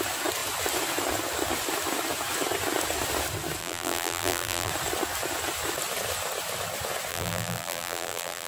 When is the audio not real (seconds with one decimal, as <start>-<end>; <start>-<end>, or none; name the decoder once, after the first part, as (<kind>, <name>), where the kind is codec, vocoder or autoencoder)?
3.6-4.7 (vocoder, BigVGAN v2); 7.1-8.5